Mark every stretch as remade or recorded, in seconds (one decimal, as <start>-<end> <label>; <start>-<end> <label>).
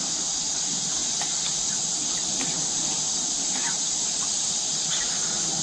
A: 0.0-5.6 recorded